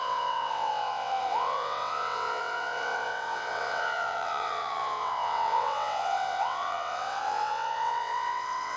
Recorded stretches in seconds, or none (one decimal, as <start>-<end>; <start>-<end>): none